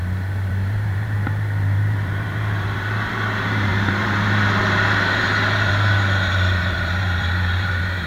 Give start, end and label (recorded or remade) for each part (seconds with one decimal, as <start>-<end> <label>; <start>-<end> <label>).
0.0-8.1 remade